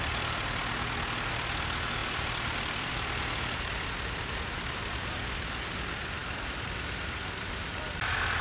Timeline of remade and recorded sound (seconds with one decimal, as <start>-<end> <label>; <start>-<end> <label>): 0.0-2.0 recorded; 2.0-5.4 remade; 5.4-6.2 recorded; 6.2-7.5 remade; 7.5-8.4 recorded